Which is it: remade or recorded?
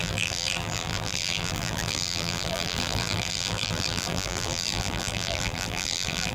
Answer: remade